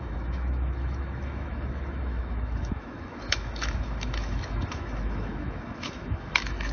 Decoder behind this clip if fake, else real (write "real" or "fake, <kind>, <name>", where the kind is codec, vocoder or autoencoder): fake, autoencoder, DAC-VAE